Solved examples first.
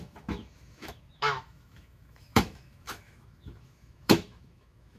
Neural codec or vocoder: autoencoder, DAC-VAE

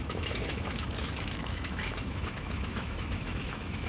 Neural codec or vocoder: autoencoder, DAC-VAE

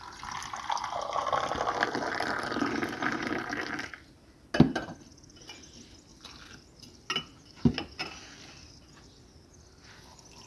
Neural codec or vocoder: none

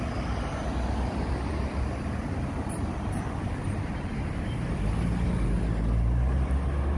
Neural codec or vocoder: none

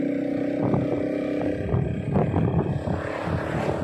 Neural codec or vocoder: none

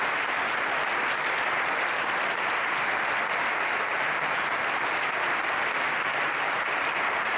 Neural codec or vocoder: none